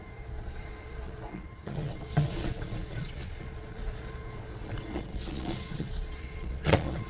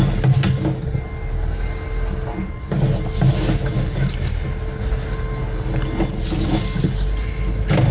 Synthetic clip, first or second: first